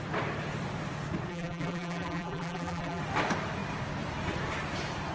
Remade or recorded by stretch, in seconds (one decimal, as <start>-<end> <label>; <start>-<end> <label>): 0.0-1.3 recorded; 1.3-3.0 remade; 3.0-5.1 recorded